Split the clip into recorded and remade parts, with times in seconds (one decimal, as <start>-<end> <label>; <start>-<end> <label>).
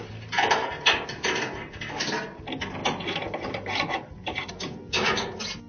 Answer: 0.0-2.8 recorded; 2.8-4.5 remade; 4.5-5.7 recorded